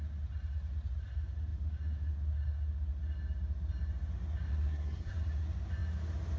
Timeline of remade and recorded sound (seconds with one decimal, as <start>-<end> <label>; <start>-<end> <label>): 0.0-4.5 recorded; 4.5-5.2 remade; 5.2-6.4 recorded